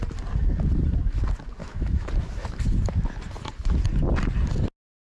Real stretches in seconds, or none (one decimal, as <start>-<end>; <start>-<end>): 0.0-1.6; 2.1-5.1